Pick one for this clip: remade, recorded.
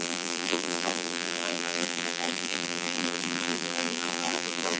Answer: remade